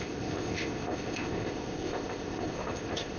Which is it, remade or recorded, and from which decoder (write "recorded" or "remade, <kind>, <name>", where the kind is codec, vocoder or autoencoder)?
remade, codec, ZipCodec